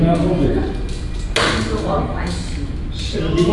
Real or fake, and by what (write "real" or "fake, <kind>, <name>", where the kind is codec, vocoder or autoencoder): real